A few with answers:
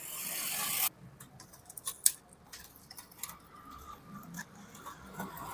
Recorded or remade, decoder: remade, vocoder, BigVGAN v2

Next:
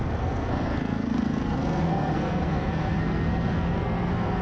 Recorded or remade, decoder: remade, codec, SNAC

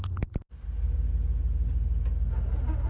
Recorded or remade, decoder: recorded